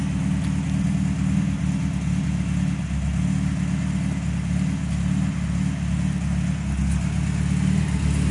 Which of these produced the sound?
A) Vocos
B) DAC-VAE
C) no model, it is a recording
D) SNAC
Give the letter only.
C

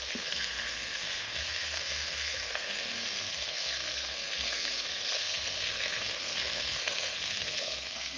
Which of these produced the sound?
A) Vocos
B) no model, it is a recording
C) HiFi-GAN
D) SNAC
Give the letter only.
D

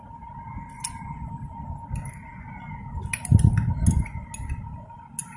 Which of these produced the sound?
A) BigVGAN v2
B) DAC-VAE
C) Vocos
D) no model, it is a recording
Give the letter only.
D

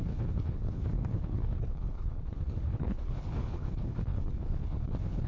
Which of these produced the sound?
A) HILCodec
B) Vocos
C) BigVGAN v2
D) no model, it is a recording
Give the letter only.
A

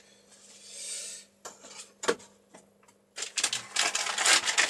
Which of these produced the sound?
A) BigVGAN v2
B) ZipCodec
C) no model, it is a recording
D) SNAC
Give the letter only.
C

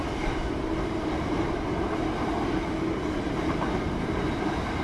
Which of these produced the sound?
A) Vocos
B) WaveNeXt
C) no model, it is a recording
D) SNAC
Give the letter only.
C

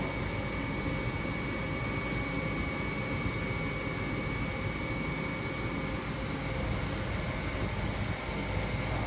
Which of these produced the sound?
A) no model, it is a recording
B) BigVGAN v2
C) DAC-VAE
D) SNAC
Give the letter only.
A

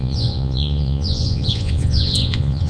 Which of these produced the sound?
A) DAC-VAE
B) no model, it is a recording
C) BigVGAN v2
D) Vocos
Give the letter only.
D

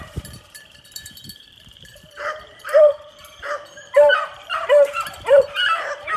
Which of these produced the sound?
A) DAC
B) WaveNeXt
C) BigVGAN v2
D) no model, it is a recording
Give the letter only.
C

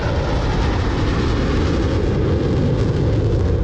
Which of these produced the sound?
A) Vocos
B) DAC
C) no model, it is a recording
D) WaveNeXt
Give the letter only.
C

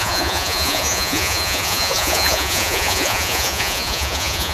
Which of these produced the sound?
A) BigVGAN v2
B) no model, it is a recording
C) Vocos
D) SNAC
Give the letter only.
C